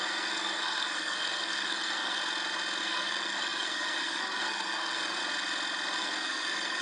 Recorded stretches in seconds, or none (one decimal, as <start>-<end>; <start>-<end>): 2.2-2.8; 5.2-6.0